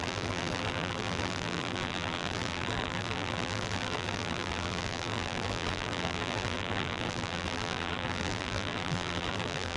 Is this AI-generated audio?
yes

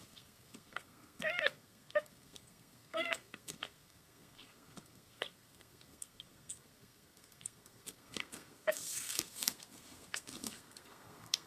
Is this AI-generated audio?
yes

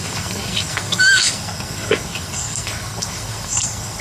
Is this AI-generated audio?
yes